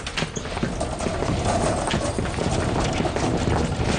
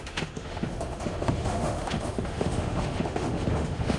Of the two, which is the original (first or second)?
first